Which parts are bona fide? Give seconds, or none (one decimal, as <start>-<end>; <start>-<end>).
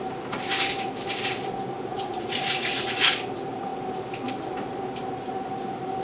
0.0-1.9; 3.1-6.0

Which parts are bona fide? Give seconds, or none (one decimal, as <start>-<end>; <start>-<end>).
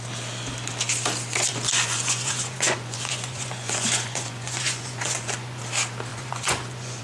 0.0-1.5; 5.6-6.1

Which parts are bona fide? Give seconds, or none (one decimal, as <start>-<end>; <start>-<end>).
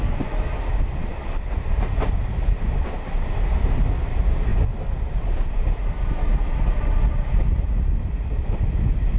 0.0-9.2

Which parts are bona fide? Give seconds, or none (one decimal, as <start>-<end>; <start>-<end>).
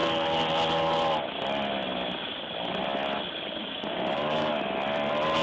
0.0-3.6; 4.5-5.4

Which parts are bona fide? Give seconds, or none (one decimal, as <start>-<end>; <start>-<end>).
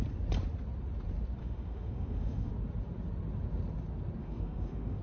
0.0-1.4; 2.5-4.2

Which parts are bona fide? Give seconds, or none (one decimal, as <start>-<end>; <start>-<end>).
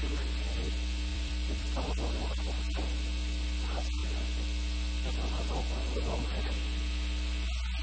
0.0-1.1; 2.2-7.8